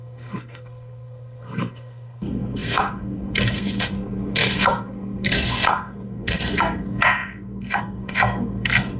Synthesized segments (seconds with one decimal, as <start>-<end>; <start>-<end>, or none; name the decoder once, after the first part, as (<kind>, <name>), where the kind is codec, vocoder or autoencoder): 0.0-9.0 (codec, SNAC)